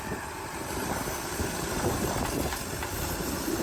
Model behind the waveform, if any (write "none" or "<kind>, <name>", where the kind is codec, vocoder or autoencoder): vocoder, BigVGAN v2